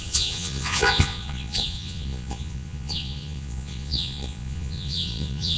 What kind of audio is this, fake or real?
fake